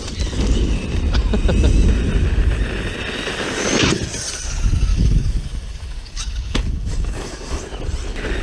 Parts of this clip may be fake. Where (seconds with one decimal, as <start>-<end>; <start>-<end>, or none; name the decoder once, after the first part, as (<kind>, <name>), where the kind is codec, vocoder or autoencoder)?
4.9-7.6 (codec, DAC)